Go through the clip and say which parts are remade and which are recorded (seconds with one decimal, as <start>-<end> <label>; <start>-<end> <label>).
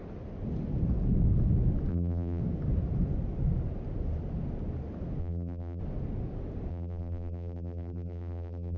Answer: 0.0-1.9 recorded; 1.9-2.4 remade; 2.4-5.2 recorded; 5.2-5.8 remade; 5.8-6.7 recorded; 6.7-8.8 remade